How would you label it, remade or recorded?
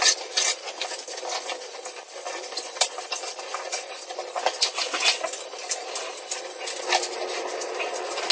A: recorded